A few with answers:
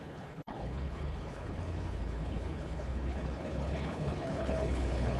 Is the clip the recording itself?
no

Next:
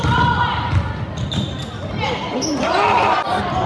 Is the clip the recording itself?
yes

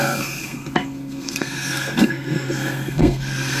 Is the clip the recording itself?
no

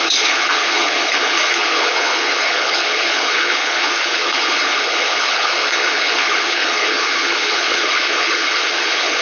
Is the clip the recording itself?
no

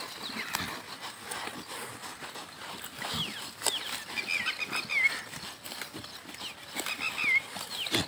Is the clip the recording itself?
yes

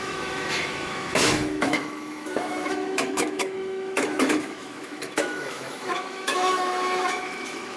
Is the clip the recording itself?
no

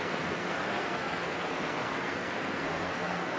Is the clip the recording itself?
no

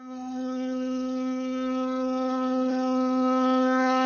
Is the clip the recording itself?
no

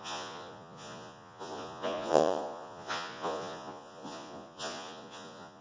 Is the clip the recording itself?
no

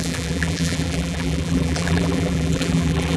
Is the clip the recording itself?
no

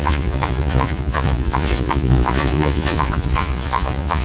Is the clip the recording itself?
no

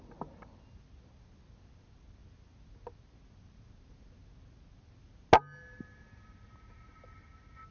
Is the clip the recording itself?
yes